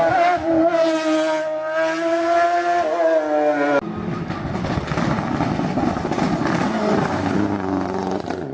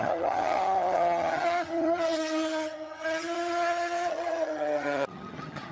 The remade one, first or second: second